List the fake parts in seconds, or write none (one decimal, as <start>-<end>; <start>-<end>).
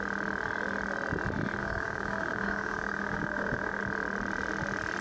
1.6-3.8